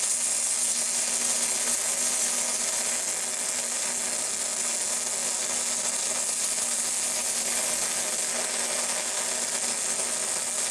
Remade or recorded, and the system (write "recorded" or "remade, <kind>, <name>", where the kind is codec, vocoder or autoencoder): recorded